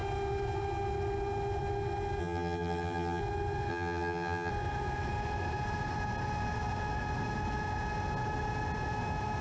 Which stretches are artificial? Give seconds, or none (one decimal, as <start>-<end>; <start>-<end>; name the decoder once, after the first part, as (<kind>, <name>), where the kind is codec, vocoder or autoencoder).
2.2-3.2 (vocoder, HiFi-GAN); 3.7-4.5